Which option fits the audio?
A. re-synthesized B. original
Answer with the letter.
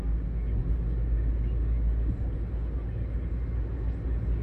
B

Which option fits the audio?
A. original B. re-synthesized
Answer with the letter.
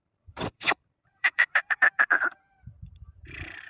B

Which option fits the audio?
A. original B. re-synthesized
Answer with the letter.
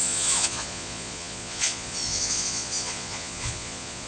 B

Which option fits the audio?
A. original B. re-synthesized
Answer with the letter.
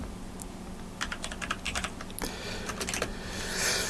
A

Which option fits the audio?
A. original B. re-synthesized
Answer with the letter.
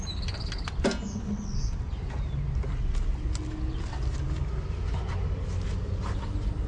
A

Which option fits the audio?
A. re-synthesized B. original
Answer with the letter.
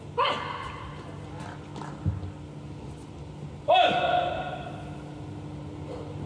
B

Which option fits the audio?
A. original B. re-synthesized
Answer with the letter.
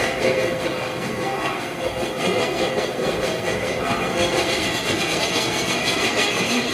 B